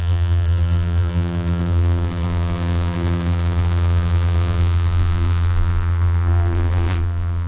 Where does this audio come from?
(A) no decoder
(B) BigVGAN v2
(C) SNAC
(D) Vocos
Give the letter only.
B